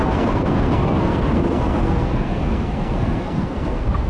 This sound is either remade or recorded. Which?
remade